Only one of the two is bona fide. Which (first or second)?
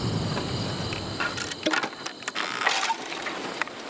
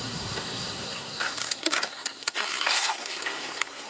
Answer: first